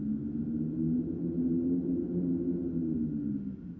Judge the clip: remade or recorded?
recorded